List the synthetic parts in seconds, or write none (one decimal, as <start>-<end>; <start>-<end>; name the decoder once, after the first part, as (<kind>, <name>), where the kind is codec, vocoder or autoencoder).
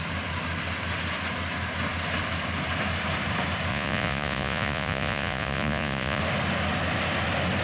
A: 3.7-6.2 (vocoder, Vocos)